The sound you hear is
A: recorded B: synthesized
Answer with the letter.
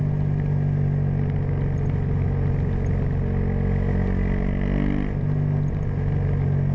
A